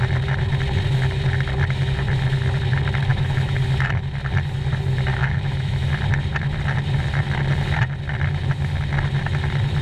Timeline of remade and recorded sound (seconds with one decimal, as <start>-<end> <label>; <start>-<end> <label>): 0.0-3.1 recorded; 3.1-3.6 remade; 3.6-5.2 recorded; 5.2-5.9 remade; 5.9-9.8 recorded